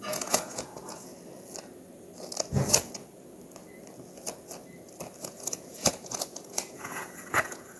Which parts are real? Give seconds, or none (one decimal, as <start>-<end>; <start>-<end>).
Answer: 1.1-5.2